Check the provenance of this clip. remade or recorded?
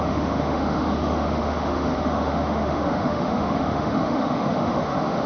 remade